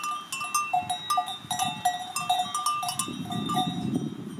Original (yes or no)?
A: yes